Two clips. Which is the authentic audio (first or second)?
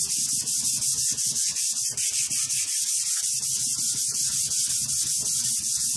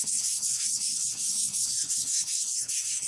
first